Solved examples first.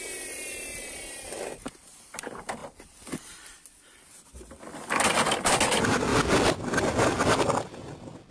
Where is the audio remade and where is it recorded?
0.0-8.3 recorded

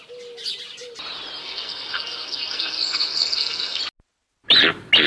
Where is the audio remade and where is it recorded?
0.0-1.4 recorded; 1.4-3.8 remade; 3.8-5.1 recorded

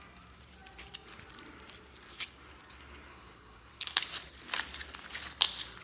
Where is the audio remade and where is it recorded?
0.0-3.1 recorded; 3.1-4.0 remade; 4.0-5.8 recorded

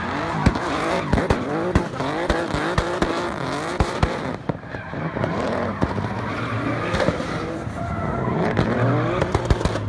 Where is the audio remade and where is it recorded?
0.0-0.4 recorded; 0.4-1.0 remade; 1.0-3.7 recorded; 3.7-8.2 remade; 8.2-9.9 recorded